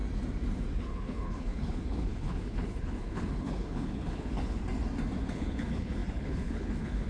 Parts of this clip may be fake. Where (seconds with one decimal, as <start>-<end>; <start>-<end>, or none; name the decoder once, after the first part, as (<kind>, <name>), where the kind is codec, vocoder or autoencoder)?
0.8-4.6 (codec, HILCodec); 5.3-7.1

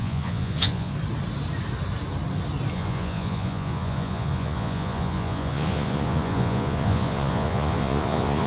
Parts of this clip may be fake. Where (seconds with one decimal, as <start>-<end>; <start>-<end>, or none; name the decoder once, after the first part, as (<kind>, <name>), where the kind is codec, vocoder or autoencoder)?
0.0-0.9 (vocoder, Vocos); 2.7-8.5

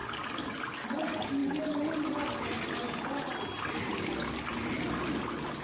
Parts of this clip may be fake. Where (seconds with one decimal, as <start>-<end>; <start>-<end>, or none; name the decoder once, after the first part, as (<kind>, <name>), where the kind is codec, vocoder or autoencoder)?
none

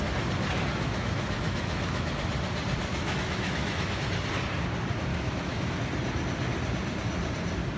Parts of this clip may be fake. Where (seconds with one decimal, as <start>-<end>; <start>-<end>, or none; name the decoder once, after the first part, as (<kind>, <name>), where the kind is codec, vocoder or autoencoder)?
0.7-2.1 (autoencoder, DAC-VAE); 2.9-4.0; 5.1-5.8